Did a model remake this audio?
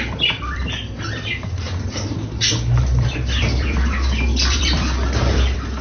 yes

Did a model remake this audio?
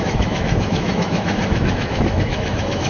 yes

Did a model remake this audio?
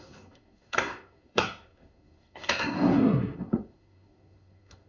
yes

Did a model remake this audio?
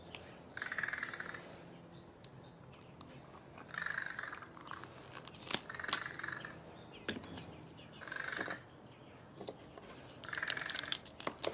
no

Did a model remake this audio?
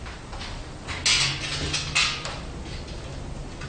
no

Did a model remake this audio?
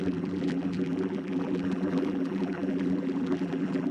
yes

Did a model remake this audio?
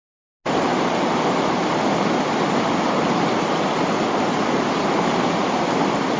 no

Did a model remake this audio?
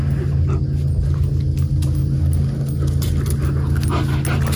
no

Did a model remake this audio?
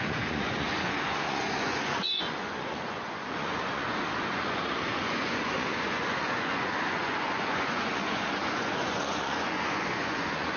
yes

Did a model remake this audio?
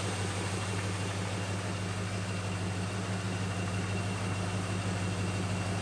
no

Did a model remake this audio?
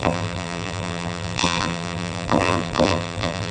yes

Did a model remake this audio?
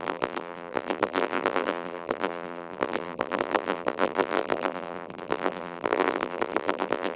yes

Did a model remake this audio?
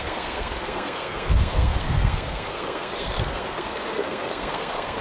yes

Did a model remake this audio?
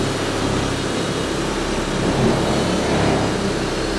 no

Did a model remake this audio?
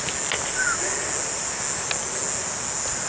no